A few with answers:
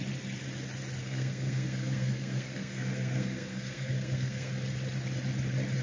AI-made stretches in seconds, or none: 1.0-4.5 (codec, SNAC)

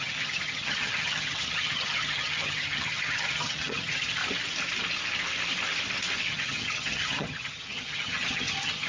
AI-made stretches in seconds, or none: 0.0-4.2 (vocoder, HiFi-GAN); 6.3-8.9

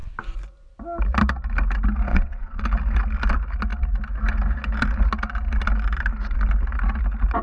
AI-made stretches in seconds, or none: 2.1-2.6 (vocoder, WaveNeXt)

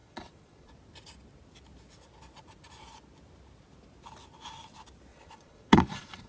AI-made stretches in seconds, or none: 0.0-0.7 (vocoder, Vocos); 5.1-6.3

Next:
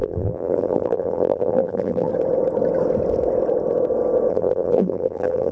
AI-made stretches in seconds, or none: 0.0-2.1 (vocoder, BigVGAN v2); 4.3-5.5

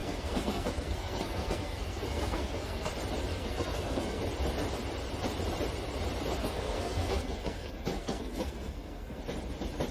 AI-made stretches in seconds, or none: 0.0-2.9 (codec, SNAC); 3.3-4.2; 6.4-9.2

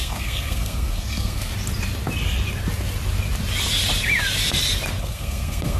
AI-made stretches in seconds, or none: 0.0-1.5 (codec, SNAC); 5.0-5.8